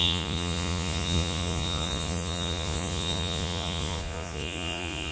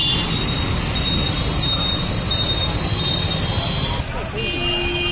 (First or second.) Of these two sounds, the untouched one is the second